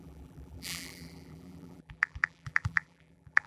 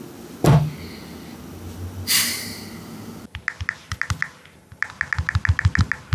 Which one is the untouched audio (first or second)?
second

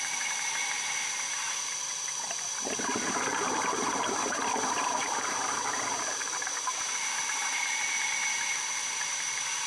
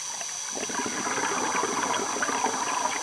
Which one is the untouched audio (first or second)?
second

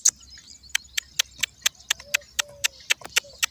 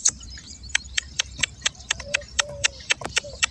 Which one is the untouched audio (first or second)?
first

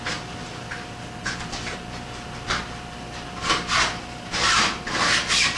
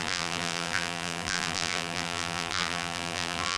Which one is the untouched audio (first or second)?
first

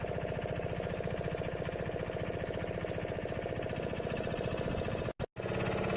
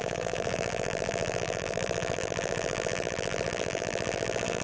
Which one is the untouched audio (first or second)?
first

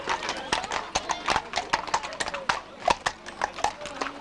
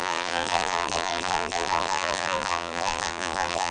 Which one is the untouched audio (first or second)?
first